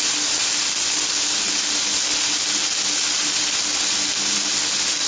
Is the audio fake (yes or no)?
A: no